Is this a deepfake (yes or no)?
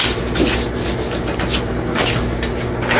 no